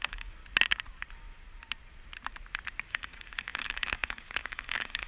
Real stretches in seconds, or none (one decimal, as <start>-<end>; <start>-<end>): 0.4-2.9